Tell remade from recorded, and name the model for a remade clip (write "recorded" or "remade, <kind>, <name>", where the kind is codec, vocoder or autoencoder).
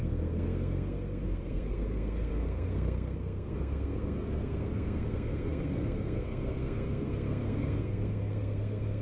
remade, codec, SNAC